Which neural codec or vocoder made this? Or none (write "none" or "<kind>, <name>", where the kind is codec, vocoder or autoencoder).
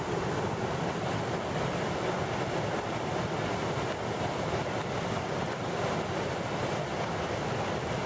none